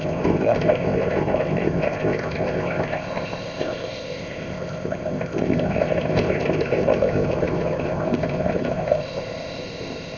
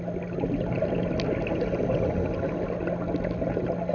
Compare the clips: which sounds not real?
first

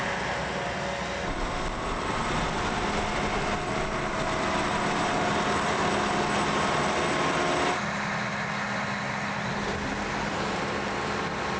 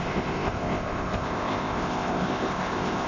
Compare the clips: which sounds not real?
second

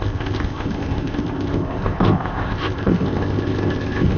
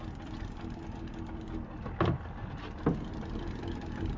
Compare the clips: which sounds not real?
first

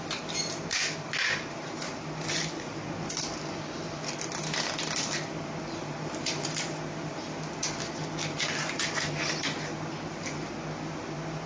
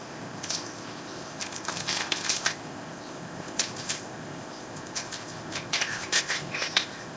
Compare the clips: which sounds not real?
second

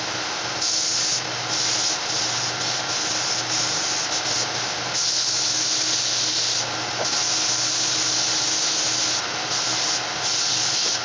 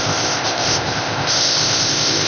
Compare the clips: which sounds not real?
second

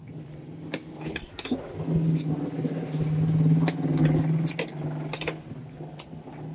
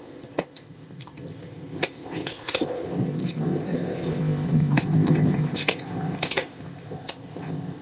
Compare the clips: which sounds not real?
second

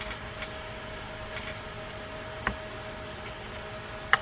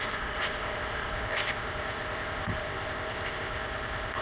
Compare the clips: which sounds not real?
second